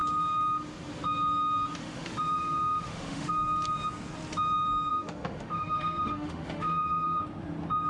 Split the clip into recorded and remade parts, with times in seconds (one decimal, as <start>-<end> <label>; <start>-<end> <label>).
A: 0.0-1.8 recorded; 1.8-3.3 remade; 3.3-4.9 recorded; 4.9-7.2 remade; 7.2-7.9 recorded